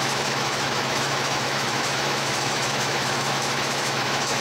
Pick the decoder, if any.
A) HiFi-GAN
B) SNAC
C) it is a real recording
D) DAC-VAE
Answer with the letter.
D